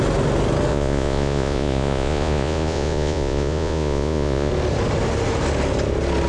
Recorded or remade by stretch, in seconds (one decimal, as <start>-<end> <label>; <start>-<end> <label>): 0.0-0.7 recorded; 0.7-4.5 remade; 4.5-6.3 recorded